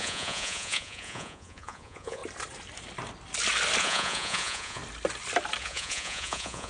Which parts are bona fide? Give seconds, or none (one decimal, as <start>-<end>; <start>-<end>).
2.2-3.8; 4.8-5.6